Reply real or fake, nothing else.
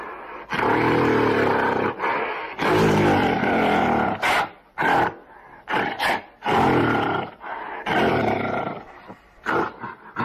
fake